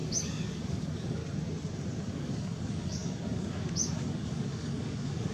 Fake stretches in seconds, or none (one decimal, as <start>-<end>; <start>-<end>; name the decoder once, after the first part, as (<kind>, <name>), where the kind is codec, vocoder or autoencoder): 0.0-1.2 (codec, DAC); 2.0-5.3